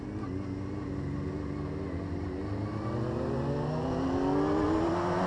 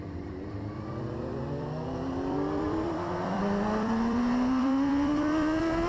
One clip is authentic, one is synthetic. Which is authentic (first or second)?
first